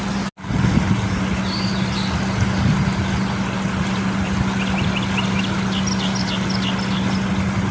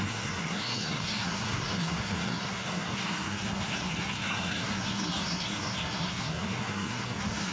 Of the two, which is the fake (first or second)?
second